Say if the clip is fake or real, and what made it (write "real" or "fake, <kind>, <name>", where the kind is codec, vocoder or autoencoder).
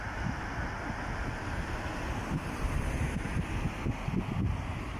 real